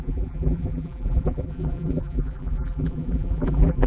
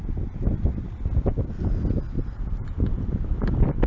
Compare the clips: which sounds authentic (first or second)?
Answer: second